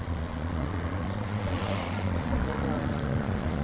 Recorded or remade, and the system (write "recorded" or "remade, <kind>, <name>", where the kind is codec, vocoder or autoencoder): remade, vocoder, Vocos